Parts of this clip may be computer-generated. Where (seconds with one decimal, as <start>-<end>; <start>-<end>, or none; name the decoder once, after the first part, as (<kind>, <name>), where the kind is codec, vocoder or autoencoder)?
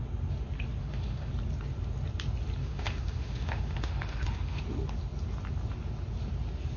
0.8-1.3 (autoencoder, DAC-VAE); 2.6-4.6